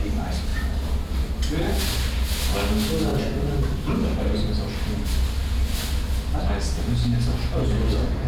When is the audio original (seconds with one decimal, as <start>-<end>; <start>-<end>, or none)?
0.0-8.3

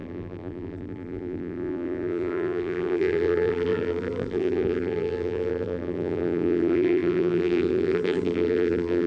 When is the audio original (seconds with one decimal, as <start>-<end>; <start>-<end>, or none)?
none

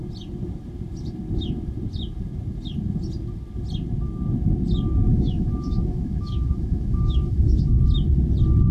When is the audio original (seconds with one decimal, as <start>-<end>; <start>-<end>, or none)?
0.0-5.1; 7.8-8.7

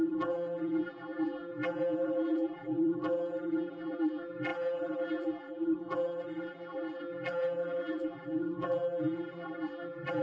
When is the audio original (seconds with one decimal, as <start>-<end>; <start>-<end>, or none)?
none

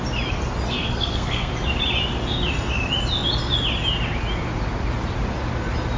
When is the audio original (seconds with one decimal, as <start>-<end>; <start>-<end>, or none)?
0.0-0.7; 1.5-6.0

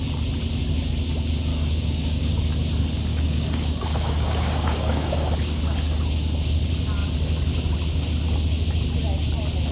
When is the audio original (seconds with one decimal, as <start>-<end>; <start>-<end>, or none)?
0.0-1.5; 2.5-3.1; 5.3-9.7

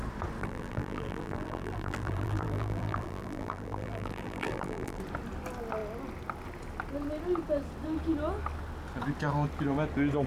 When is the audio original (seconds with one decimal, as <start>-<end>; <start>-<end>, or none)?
0.0-0.4; 5.0-10.3